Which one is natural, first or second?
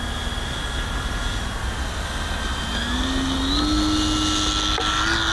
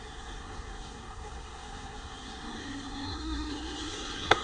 first